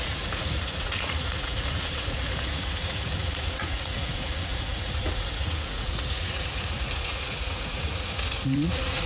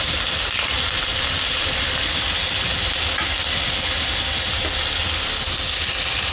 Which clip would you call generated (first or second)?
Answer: first